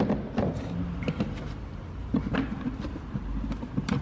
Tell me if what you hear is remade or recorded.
recorded